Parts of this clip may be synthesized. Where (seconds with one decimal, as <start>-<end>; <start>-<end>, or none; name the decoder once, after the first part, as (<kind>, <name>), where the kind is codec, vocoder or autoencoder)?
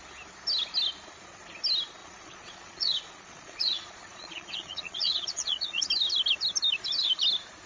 2.0-5.8 (vocoder, Vocos)